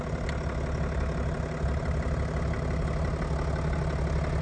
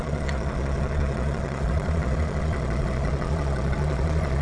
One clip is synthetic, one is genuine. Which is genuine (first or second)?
first